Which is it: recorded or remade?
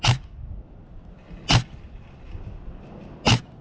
recorded